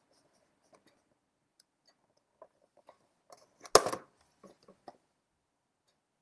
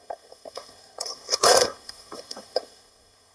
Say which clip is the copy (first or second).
second